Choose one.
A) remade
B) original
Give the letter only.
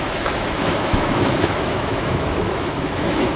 A